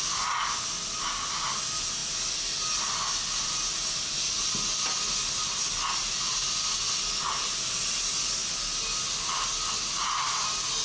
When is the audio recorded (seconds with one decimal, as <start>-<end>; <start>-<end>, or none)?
0.0-10.8